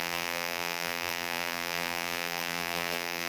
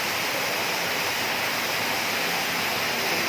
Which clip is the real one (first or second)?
second